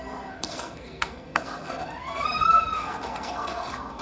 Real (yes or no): no